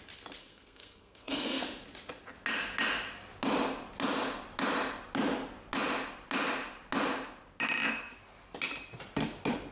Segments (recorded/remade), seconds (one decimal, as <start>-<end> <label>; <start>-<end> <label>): 0.0-0.4 recorded; 0.4-1.6 remade; 1.6-9.7 recorded